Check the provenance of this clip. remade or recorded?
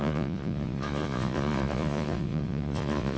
remade